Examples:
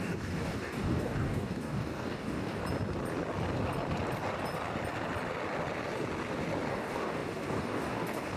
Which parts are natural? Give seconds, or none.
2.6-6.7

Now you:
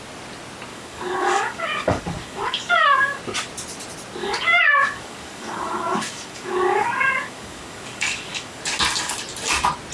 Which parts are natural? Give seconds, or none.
0.0-0.7; 3.2-4.2; 8.6-9.9

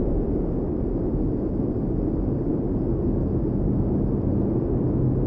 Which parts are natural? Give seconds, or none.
0.0-5.3

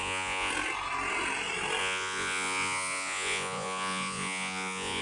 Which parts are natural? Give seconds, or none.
0.5-1.8

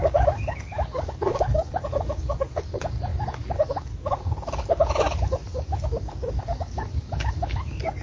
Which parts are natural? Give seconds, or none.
none

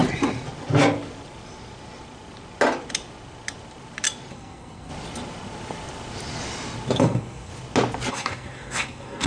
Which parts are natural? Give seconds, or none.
0.0-4.3; 4.9-7.0; 7.5-8.1

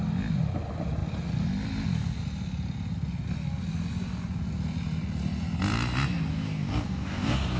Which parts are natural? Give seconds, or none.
0.0-6.3

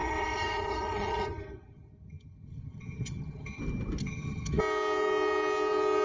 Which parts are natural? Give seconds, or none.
3.6-4.0; 4.6-6.0